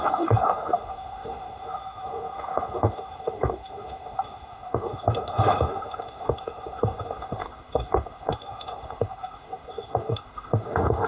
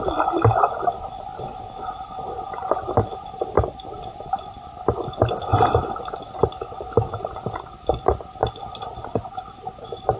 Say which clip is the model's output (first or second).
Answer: first